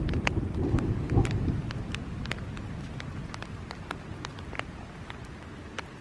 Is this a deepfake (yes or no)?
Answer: no